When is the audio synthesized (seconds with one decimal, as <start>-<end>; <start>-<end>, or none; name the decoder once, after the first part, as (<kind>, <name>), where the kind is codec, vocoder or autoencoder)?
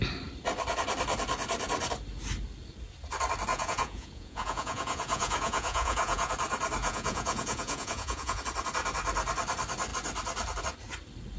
3.5-6.3 (vocoder, Vocos); 6.8-8.4